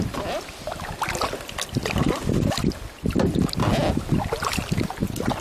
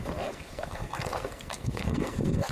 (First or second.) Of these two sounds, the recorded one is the first